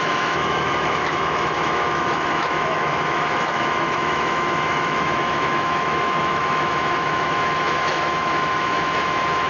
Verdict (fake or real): fake